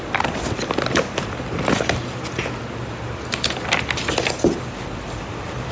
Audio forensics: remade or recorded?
recorded